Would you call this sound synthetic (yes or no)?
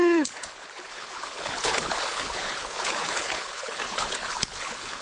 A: yes